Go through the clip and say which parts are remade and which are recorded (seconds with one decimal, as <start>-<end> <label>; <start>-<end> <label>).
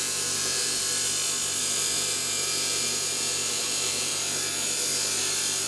0.0-0.8 remade; 0.8-1.6 recorded; 1.6-4.1 remade; 4.1-5.7 recorded